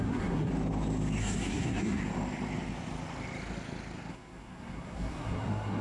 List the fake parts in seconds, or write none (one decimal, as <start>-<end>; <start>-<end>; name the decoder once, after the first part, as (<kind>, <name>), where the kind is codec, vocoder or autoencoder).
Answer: 0.0-0.5 (codec, SNAC); 1.2-2.0; 4.1-5.8